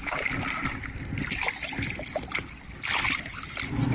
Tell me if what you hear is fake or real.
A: real